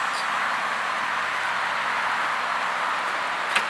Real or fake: real